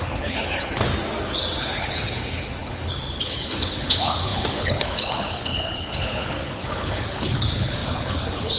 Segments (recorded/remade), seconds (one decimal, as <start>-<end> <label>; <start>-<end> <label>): 0.0-0.9 remade; 0.9-1.6 recorded; 1.6-8.6 remade